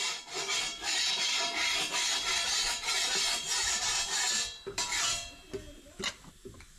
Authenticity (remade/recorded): recorded